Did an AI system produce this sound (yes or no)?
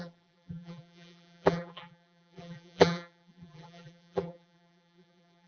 yes